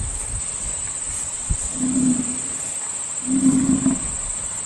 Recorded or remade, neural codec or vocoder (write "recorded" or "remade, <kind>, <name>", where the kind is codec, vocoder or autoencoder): recorded